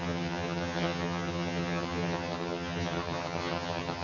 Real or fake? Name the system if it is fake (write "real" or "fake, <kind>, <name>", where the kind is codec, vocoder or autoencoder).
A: fake, vocoder, HiFi-GAN